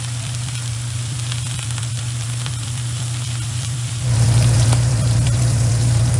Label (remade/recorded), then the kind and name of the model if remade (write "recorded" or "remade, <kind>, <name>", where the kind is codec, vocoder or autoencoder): remade, vocoder, BigVGAN v2